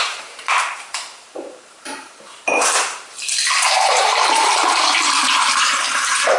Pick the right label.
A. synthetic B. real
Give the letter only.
A